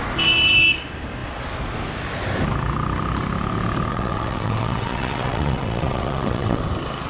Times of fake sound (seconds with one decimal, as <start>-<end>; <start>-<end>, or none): 3.9-6.6